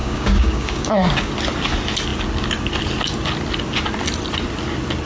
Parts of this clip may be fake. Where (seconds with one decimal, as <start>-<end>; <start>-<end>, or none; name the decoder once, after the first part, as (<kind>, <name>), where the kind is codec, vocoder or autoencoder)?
0.0-1.3 (codec, DAC)